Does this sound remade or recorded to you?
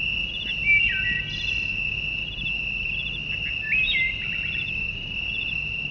recorded